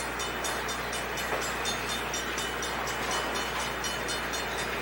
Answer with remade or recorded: recorded